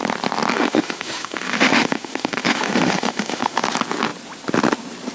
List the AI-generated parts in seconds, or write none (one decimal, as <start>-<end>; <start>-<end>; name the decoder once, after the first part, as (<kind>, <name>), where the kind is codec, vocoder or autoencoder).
0.5-3.6 (autoencoder, DAC-VAE)